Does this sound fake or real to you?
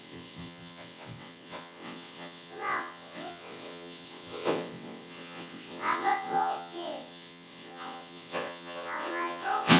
fake